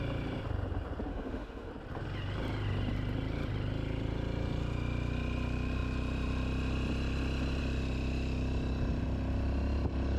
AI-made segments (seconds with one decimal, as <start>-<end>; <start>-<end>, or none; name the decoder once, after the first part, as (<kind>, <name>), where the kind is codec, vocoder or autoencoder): 1.1-1.7 (autoencoder, DAC-VAE)